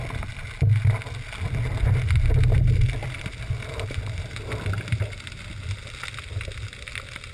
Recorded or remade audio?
recorded